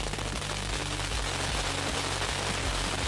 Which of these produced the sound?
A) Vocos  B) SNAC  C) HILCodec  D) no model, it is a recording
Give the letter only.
D